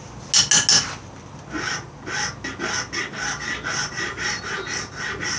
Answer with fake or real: real